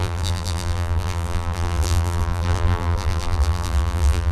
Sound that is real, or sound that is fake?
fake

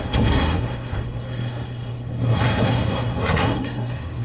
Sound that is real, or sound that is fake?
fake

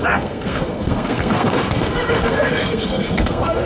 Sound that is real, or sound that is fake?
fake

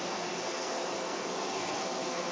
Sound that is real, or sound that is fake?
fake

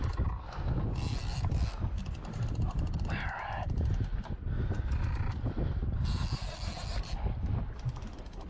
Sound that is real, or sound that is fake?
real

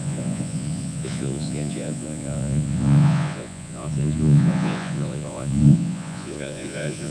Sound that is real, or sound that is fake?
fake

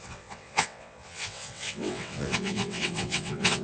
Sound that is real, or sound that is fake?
fake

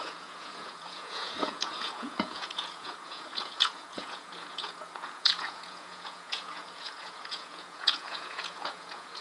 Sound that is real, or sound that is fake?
fake